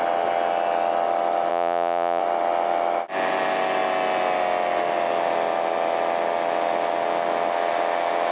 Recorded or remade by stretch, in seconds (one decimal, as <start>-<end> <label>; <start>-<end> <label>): 0.0-1.5 recorded; 1.5-2.2 remade; 2.2-8.3 recorded